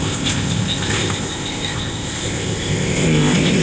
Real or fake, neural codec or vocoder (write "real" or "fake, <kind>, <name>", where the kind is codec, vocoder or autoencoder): fake, codec, ZipCodec